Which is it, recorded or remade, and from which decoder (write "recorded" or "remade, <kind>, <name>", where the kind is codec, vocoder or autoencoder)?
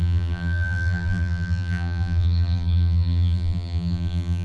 remade, vocoder, BigVGAN v2